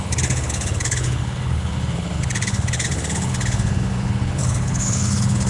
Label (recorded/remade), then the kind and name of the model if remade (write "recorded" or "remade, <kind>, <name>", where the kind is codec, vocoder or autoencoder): remade, codec, HILCodec